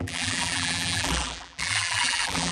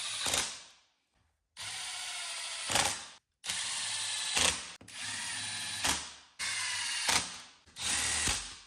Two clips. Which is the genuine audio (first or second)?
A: second